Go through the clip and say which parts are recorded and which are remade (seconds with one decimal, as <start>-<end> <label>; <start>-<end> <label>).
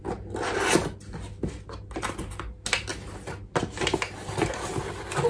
0.0-5.3 recorded